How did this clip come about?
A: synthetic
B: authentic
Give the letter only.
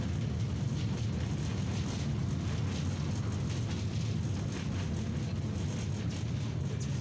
B